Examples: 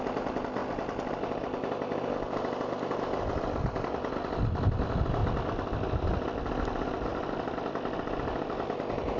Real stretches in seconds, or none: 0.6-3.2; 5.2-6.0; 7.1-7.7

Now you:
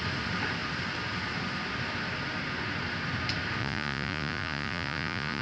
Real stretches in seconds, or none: 0.0-3.6